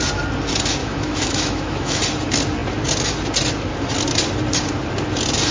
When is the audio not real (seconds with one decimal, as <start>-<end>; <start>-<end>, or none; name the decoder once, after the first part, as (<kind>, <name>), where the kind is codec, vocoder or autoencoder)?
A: 0.8-2.0 (autoencoder, DAC-VAE)